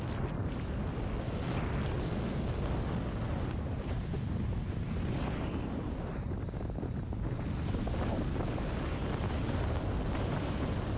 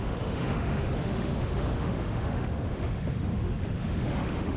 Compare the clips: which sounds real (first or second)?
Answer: first